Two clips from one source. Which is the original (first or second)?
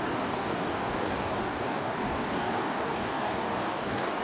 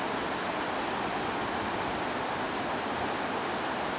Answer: second